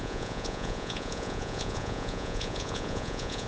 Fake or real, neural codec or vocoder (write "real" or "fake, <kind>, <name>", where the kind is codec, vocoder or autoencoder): fake, vocoder, Vocos